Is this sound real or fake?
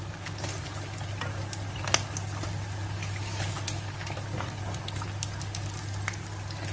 real